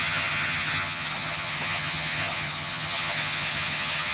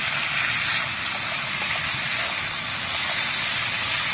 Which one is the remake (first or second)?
first